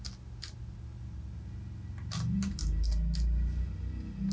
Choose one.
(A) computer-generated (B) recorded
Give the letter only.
B